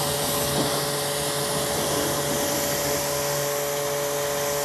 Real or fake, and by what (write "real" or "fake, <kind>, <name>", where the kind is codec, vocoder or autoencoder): real